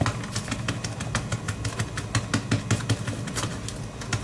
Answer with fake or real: real